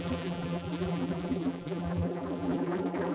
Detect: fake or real fake